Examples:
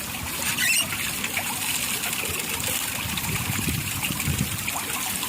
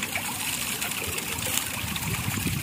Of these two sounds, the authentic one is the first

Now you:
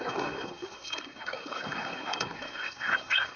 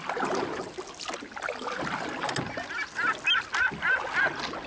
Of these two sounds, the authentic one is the second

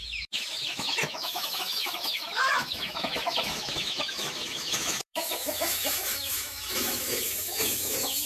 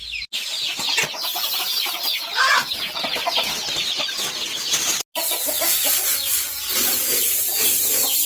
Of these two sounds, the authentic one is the second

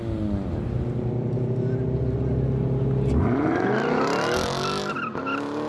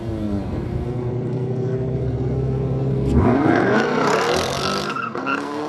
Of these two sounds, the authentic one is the first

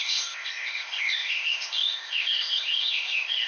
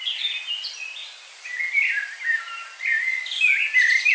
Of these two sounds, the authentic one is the second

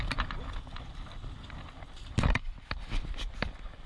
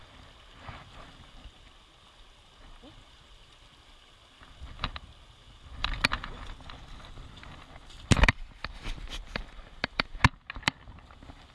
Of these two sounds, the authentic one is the second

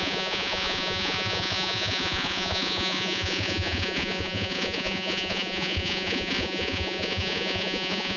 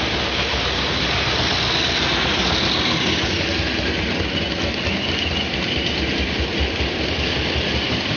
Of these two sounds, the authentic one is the second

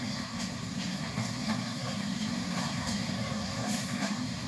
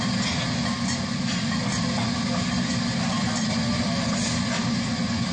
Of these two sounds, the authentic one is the second